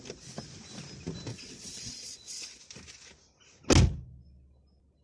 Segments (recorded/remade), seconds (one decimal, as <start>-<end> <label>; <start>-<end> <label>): 0.0-1.3 recorded; 1.3-2.6 remade; 2.6-5.0 recorded